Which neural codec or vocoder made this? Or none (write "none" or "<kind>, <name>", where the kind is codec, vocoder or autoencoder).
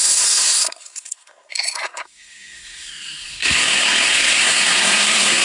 codec, SNAC